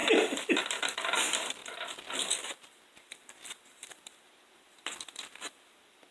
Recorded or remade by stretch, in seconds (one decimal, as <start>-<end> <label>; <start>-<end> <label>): 0.0-6.1 recorded